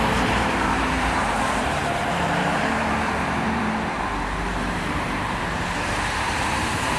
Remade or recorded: remade